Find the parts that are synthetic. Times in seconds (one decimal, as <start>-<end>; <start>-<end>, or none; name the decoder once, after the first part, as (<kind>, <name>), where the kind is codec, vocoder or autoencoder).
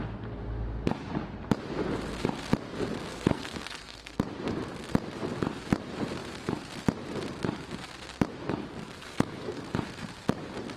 3.1-4.2 (codec, SNAC); 8.8-9.6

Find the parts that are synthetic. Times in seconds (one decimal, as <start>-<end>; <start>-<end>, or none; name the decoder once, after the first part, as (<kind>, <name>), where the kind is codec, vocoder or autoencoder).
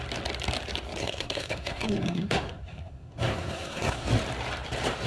1.0-4.1 (codec, SNAC)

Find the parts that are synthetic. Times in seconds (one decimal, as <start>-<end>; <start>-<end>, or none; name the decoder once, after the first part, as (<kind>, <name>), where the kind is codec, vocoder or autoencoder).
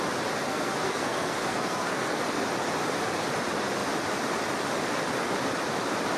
0.4-2.2 (codec, SNAC)